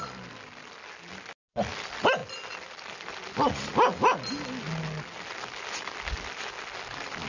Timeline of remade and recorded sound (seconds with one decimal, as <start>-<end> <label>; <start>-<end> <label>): 0.0-7.3 recorded